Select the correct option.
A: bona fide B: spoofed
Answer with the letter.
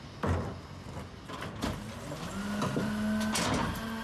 A